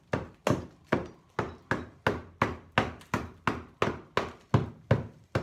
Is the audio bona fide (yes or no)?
yes